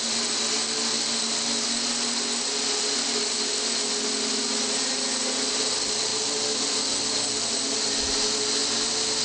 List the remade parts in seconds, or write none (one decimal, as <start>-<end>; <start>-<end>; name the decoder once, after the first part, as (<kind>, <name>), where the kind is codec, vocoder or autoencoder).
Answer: 0.0-8.6 (vocoder, BigVGAN v2)